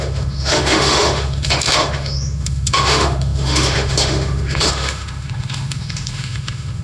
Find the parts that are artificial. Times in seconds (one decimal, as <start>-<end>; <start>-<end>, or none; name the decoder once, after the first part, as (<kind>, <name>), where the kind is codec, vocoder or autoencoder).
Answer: 0.0-6.8 (autoencoder, DAC-VAE)